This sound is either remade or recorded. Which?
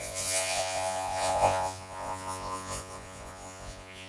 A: remade